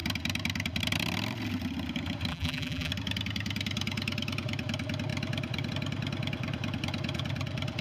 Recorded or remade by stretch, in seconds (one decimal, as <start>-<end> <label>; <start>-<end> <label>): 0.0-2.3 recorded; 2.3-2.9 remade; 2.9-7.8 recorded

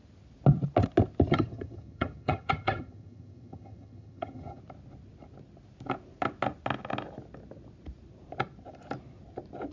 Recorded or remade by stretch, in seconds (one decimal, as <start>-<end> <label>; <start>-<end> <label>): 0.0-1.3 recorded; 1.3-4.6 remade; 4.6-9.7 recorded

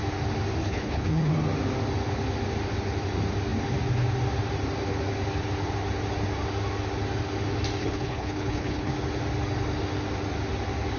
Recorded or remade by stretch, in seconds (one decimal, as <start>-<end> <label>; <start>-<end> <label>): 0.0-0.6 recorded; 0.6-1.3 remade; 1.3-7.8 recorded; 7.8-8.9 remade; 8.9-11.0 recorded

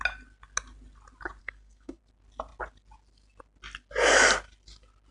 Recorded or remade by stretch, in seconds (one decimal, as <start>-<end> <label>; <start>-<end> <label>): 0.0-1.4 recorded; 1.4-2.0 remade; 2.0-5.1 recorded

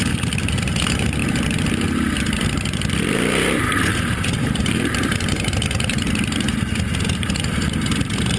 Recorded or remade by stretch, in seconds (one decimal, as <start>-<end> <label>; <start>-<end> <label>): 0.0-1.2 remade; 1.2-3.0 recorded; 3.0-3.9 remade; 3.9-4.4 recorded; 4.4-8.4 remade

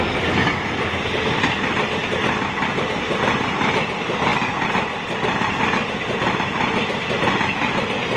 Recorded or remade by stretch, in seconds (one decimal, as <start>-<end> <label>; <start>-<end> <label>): 0.0-8.2 recorded